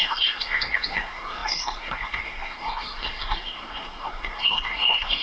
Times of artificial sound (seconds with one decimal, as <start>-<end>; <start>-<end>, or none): 0.0-5.2